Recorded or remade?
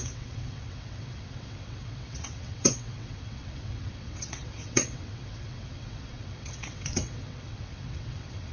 remade